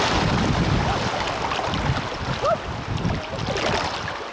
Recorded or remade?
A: recorded